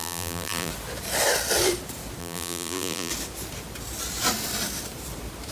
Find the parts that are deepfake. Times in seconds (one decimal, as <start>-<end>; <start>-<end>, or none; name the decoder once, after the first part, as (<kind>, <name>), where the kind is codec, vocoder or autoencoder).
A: 0.0-0.7 (vocoder, BigVGAN v2); 2.2-3.1